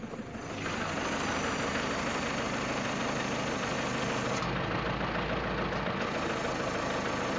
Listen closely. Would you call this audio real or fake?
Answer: real